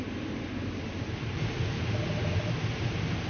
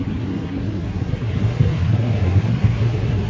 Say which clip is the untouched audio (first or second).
first